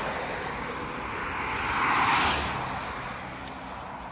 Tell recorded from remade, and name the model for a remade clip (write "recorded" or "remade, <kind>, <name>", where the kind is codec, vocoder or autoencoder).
recorded